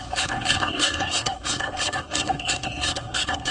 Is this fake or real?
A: fake